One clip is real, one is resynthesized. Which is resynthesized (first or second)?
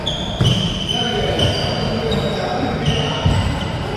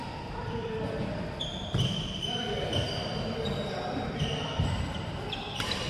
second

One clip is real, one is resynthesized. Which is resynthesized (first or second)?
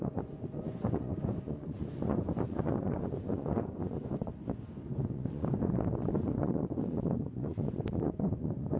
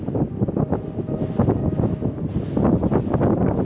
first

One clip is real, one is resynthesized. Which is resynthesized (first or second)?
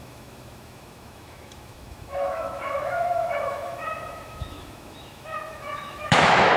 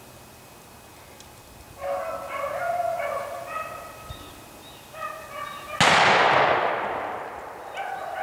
first